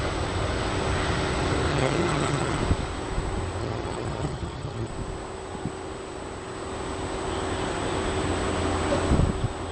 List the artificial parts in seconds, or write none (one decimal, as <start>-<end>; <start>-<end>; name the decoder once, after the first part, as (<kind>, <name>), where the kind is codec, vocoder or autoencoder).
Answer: 1.7-2.6 (vocoder, HiFi-GAN); 3.6-4.9